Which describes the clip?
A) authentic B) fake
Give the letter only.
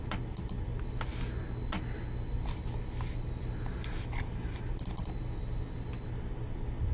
A